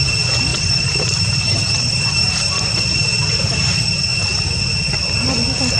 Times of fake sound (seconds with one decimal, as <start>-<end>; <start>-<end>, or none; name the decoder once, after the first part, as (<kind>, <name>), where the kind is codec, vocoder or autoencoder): 0.5-3.5 (vocoder, BigVGAN v2)